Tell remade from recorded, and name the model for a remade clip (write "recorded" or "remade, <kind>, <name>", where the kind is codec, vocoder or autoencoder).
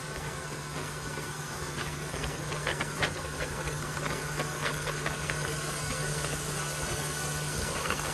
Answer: remade, codec, SNAC